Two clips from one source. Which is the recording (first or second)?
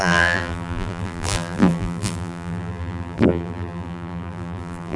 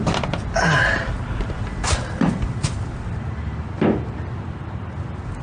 second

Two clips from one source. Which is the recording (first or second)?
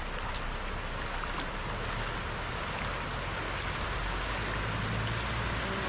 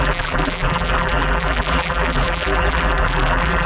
first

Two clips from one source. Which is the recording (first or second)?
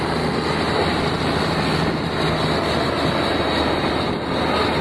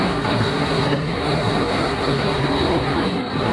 first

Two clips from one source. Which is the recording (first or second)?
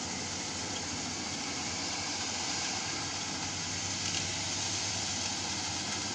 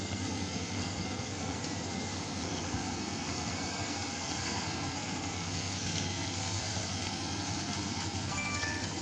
first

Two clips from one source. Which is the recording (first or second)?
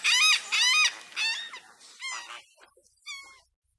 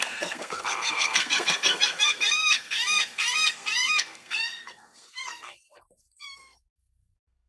first